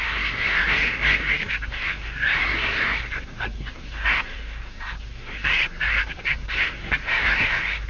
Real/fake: fake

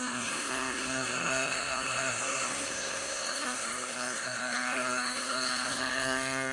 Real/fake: fake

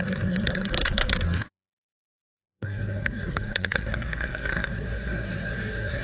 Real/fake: fake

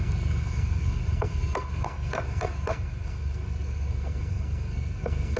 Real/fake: fake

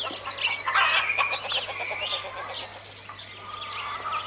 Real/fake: real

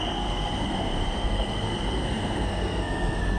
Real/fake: fake